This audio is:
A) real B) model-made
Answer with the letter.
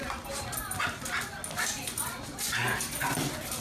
A